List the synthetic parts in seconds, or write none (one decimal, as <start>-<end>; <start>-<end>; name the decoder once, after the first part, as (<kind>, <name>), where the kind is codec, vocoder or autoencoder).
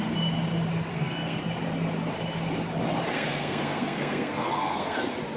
0.9-1.4 (codec, SNAC); 3.1-5.0